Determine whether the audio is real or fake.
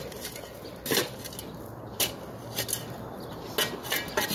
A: real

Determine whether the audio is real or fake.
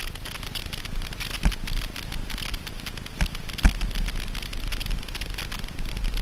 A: real